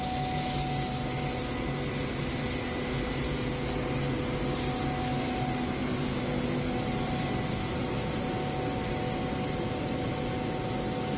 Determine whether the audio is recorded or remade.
recorded